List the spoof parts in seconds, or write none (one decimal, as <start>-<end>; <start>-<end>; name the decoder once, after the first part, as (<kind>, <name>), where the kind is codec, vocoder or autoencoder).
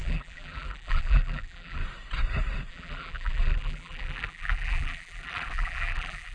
0.0-1.8 (vocoder, BigVGAN v2); 2.7-6.3